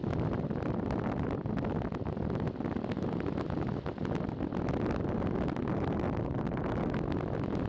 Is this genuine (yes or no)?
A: yes